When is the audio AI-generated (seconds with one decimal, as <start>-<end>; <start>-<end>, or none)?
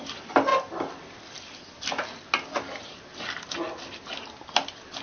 none